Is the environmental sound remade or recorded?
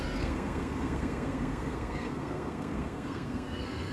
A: remade